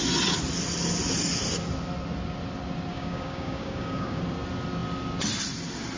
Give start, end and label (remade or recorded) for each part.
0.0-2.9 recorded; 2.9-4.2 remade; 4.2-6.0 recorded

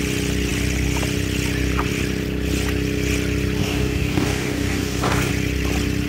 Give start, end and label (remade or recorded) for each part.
0.0-3.6 recorded; 3.6-5.3 remade; 5.3-6.1 recorded